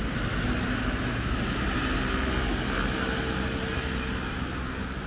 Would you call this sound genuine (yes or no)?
yes